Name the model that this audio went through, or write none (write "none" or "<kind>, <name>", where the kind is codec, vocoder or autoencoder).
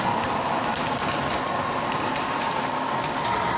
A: none